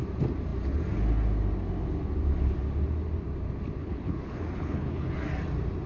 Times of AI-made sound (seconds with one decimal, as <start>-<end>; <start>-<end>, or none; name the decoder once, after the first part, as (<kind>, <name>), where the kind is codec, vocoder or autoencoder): 3.8-5.1 (codec, HILCodec)